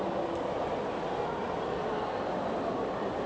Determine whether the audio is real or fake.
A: real